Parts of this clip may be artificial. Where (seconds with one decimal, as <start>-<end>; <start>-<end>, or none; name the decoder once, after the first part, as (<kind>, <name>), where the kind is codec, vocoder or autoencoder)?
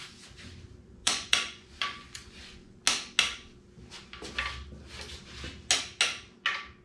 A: 1.0-2.8 (vocoder, Vocos)